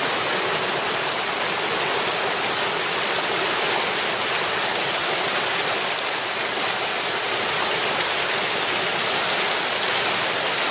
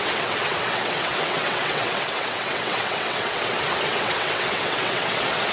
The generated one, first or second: second